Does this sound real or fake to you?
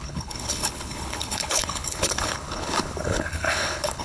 fake